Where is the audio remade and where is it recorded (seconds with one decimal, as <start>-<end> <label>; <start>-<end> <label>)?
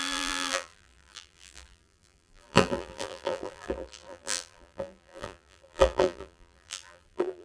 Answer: 0.0-7.4 remade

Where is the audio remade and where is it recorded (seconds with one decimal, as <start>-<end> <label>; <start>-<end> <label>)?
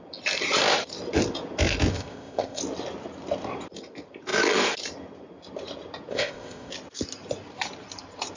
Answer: 0.0-1.9 recorded; 1.9-2.6 remade; 2.6-6.1 recorded; 6.1-6.7 remade; 6.7-8.4 recorded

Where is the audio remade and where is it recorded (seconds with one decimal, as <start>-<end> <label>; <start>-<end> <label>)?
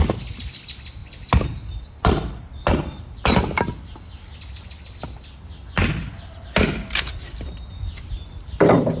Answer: 0.0-9.0 recorded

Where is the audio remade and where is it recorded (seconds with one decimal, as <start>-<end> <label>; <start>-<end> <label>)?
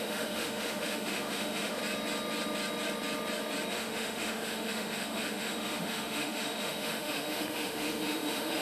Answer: 0.0-1.8 remade; 1.8-3.7 recorded; 3.7-8.6 remade